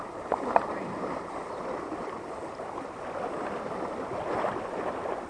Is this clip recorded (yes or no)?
no